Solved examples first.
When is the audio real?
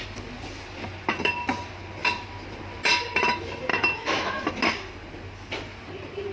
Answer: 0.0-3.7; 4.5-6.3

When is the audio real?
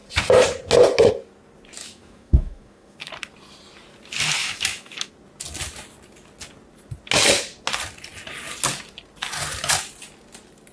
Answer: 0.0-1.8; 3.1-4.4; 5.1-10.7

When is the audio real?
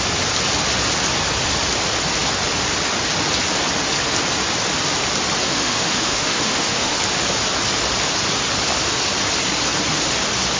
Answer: 0.0-5.5; 7.0-10.6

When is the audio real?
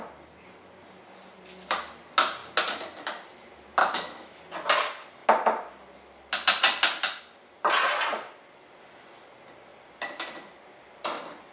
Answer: 0.0-3.8; 4.4-11.5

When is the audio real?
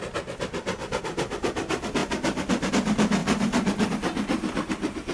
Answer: 0.0-5.1